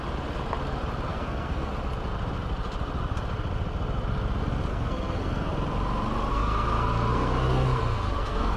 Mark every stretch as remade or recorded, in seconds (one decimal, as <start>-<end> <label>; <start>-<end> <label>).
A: 0.0-1.1 recorded; 1.1-1.7 remade; 1.7-4.7 recorded; 4.7-5.5 remade; 5.5-6.3 recorded; 6.3-8.6 remade